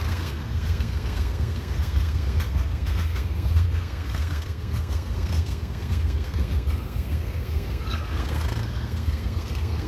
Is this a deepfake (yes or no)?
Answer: yes